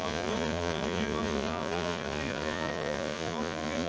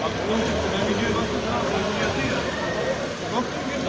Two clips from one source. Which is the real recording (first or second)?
second